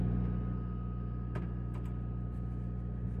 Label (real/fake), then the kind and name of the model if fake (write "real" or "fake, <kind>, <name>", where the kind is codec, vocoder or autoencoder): real